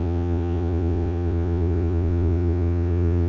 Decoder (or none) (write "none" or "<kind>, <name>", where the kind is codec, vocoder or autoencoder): vocoder, Vocos